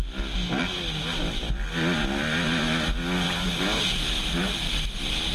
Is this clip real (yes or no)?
yes